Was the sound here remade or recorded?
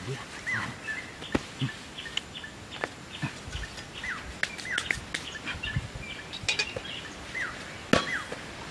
recorded